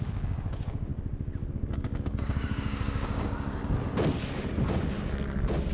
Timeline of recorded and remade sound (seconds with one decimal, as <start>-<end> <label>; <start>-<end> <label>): 0.0-0.9 remade; 0.9-1.5 recorded; 1.5-3.6 remade; 3.6-5.7 recorded